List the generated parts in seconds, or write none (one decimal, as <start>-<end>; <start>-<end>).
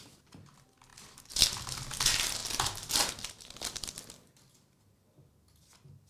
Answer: none